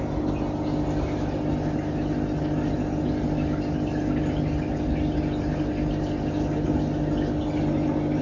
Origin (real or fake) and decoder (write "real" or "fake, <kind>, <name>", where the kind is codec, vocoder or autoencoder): real